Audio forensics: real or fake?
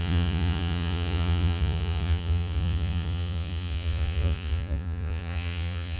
fake